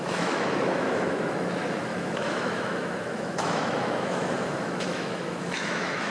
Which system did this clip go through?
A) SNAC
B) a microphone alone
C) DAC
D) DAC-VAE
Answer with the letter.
D